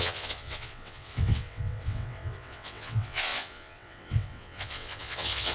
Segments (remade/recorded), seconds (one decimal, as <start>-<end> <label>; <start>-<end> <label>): 0.0-5.5 remade